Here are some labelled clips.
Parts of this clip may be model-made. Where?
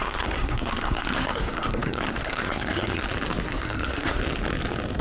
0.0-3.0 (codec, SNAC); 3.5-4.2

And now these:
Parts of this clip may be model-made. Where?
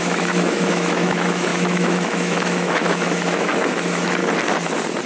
0.0-4.2 (autoencoder, DAC-VAE)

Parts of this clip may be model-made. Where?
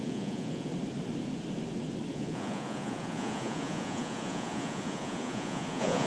0.0-0.7 (vocoder, Vocos); 2.1-6.1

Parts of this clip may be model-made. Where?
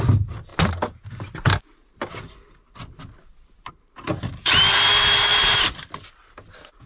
0.0-6.9 (vocoder, BigVGAN v2)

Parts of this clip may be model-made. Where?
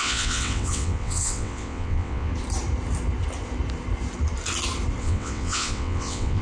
0.0-2.3 (vocoder, WaveNeXt); 5.0-6.4